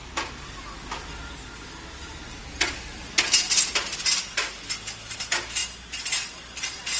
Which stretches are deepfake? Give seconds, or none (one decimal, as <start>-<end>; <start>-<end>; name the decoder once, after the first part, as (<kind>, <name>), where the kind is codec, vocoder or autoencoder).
none